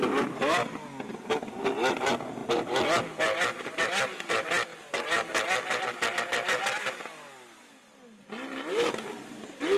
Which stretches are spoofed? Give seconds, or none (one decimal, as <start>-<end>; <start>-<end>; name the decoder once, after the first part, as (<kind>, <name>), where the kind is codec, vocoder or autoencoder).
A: none